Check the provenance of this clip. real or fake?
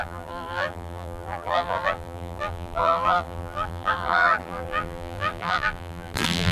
fake